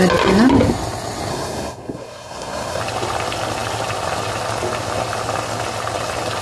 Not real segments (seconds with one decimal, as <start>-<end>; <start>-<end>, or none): 1.3-2.8